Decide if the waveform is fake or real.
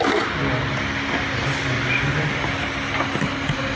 real